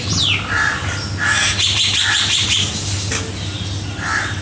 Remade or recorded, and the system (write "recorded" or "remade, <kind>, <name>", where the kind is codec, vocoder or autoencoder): recorded